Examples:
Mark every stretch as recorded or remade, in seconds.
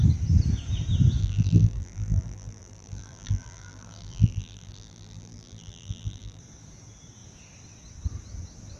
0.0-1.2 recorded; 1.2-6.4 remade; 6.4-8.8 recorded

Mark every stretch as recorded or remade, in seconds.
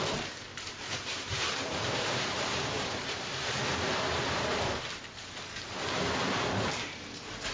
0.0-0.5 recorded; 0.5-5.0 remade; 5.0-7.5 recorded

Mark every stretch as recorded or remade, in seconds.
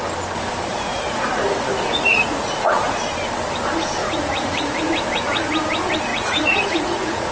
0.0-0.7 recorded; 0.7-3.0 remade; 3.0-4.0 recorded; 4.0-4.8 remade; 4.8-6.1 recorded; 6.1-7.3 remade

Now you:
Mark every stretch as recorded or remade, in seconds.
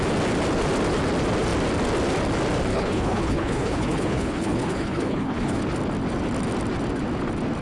0.0-2.7 recorded; 2.7-5.6 remade; 5.6-7.6 recorded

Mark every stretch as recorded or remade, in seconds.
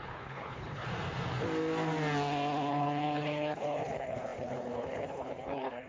0.0-0.9 remade; 0.9-2.7 recorded; 2.7-5.9 remade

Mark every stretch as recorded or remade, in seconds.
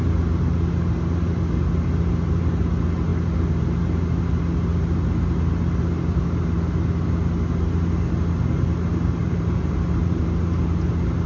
0.0-9.2 recorded; 9.2-10.2 remade; 10.2-11.3 recorded